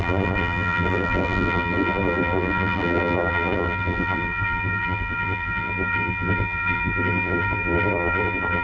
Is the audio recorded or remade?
remade